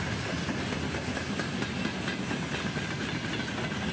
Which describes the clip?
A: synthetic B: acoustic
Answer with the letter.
B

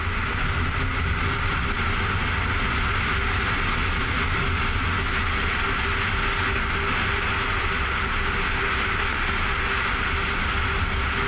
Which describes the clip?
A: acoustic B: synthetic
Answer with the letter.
A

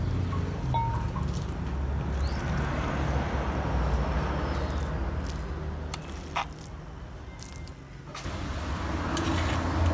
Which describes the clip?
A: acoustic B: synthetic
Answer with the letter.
A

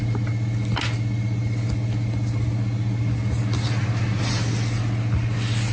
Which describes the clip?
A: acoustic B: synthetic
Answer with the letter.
A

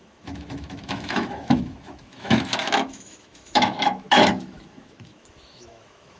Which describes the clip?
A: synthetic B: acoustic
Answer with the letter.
A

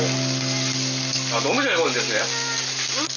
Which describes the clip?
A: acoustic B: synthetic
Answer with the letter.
A